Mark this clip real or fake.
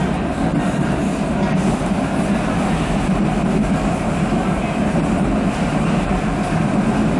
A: real